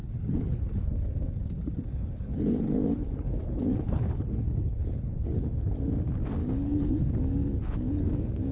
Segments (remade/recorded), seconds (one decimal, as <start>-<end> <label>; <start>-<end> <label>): 0.0-1.0 remade; 1.0-1.9 recorded; 1.9-5.8 remade; 5.8-6.4 recorded; 6.4-6.9 remade; 6.9-7.6 recorded; 7.6-8.1 remade; 8.1-8.5 recorded